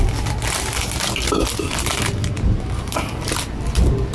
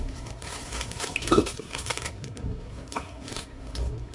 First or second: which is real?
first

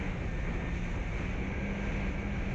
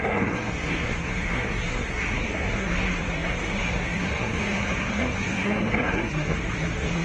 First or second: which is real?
first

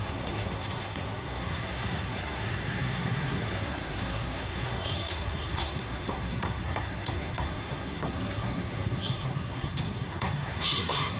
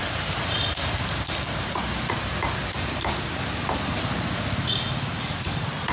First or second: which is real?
second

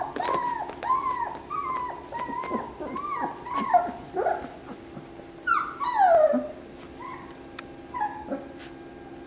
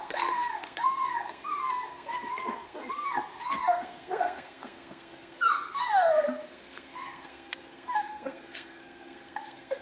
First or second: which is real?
first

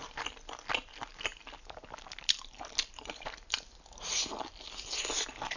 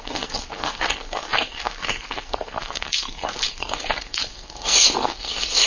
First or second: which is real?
first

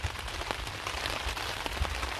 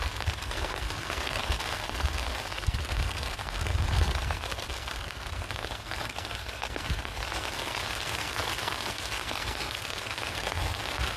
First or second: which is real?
first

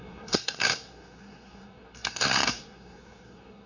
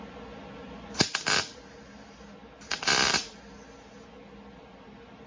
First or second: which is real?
second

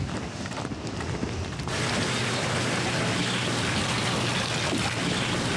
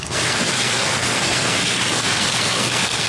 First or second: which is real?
first